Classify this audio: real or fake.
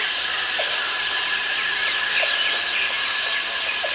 real